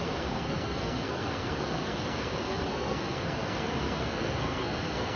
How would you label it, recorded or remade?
remade